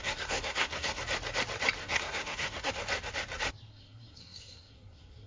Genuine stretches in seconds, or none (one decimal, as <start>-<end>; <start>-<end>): 1.0-1.8; 2.7-3.7